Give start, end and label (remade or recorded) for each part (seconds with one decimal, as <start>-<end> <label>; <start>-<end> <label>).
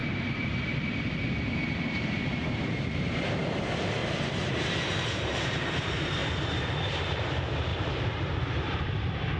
0.0-1.9 recorded; 1.9-9.4 remade